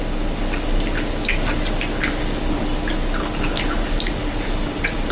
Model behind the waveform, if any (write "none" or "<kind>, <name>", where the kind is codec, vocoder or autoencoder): none